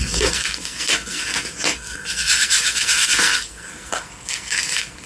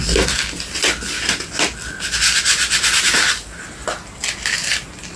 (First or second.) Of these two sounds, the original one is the second